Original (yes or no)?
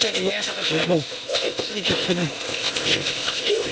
no